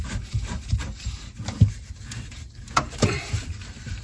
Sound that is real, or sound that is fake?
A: fake